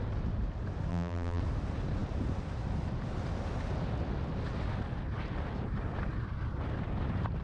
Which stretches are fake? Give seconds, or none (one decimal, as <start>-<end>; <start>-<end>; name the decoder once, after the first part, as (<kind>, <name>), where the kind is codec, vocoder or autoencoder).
0.9-1.4 (vocoder, BigVGAN v2)